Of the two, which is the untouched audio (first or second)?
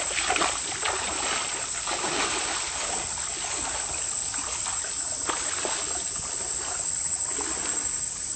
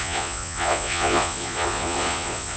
first